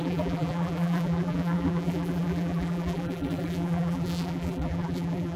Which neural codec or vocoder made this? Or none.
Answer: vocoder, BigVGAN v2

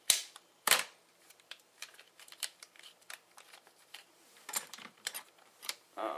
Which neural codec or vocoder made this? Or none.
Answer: vocoder, BigVGAN v2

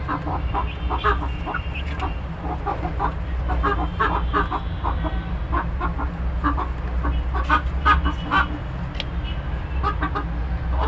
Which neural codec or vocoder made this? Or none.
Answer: none